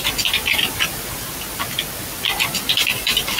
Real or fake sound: real